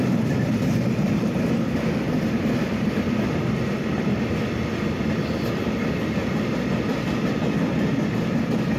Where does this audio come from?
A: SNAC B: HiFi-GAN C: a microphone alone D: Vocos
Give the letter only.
C